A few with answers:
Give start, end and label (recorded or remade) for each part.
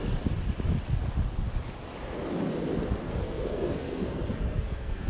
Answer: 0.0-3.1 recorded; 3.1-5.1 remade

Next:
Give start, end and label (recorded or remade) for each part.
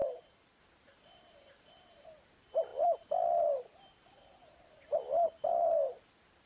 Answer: 0.0-0.6 recorded; 0.6-6.5 remade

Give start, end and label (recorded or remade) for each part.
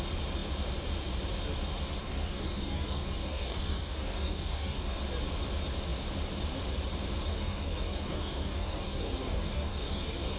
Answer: 0.0-2.0 recorded; 2.0-5.0 remade; 5.0-7.3 recorded; 7.3-10.4 remade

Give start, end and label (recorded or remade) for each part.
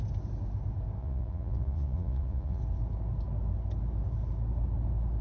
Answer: 0.0-1.0 recorded; 1.0-2.6 remade; 2.6-5.2 recorded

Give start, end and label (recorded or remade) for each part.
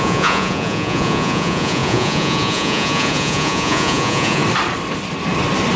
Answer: 0.0-4.4 remade; 4.4-5.8 recorded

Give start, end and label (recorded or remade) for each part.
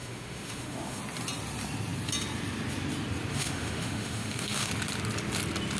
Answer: 0.0-1.0 remade; 1.0-3.3 recorded; 3.3-4.7 remade; 4.7-5.8 recorded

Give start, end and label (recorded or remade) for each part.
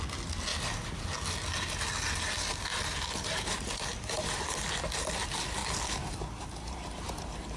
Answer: 0.0-2.7 recorded; 2.7-4.7 remade; 4.7-5.6 recorded; 5.6-7.6 remade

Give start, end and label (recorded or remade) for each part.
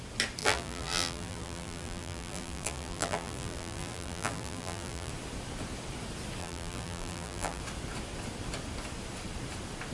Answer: 0.0-0.4 recorded; 0.4-5.1 remade; 5.1-6.4 recorded; 6.4-7.6 remade; 7.6-9.9 recorded